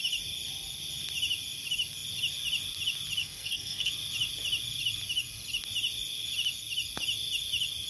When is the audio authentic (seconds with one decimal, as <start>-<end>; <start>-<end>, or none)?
0.0-3.2; 3.9-7.9